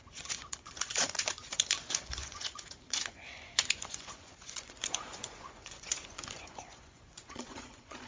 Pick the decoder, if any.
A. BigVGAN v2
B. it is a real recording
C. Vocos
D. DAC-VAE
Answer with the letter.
C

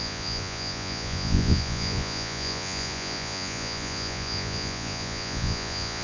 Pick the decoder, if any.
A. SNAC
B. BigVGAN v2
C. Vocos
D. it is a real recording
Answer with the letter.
C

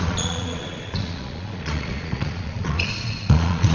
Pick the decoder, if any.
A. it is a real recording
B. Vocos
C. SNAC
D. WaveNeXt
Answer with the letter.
B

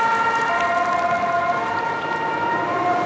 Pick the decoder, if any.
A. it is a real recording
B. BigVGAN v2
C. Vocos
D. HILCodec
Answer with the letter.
A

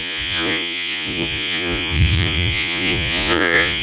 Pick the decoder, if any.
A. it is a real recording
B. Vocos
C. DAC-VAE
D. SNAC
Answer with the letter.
B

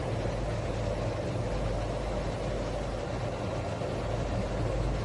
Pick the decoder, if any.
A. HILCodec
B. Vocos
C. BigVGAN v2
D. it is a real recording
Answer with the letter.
D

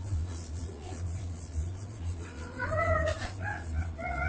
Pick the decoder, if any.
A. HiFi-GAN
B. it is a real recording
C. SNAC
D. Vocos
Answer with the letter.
D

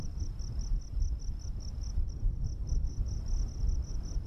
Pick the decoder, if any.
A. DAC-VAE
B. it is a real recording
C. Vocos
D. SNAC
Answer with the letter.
B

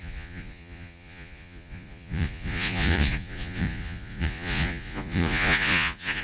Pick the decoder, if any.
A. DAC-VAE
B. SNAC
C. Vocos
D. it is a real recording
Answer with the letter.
C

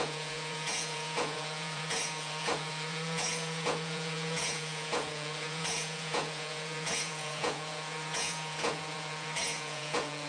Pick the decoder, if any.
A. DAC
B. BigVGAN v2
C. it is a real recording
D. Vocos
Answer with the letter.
D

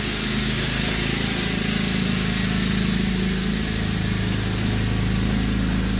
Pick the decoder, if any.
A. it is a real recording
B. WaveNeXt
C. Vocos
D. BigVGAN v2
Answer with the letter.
A